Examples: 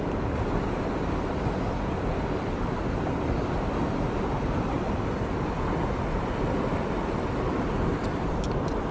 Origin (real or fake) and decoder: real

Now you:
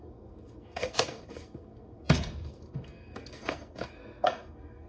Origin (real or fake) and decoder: fake, codec, SNAC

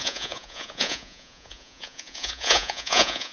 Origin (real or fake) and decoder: fake, vocoder, Vocos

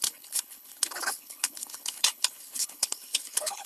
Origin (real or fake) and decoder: fake, codec, HILCodec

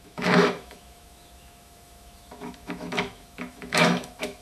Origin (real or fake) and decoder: fake, autoencoder, DAC-VAE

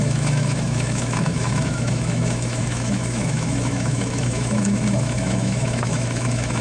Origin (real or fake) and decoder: fake, autoencoder, DAC-VAE